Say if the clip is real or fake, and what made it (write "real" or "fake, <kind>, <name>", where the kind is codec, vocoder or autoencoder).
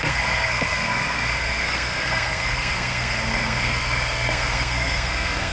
fake, codec, SNAC